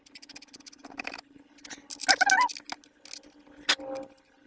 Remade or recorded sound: recorded